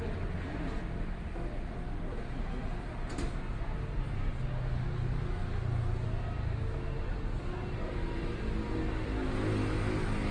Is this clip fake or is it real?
real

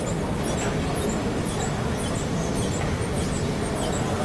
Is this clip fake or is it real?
real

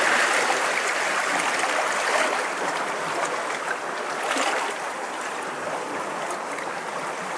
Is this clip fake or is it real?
real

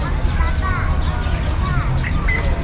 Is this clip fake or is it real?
real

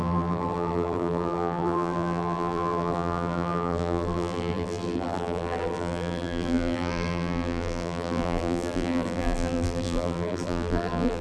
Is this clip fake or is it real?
fake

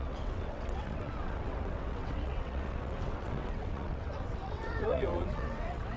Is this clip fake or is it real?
fake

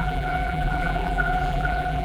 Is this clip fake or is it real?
fake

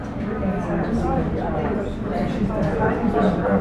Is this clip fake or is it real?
fake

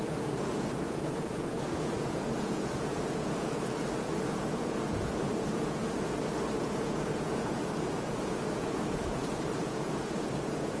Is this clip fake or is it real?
fake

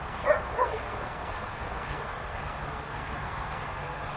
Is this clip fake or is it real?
fake